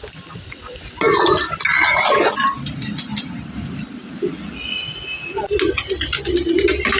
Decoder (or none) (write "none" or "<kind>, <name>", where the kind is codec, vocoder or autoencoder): none